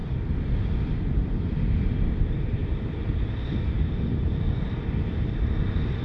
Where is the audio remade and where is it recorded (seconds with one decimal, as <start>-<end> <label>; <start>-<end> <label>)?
0.0-6.0 recorded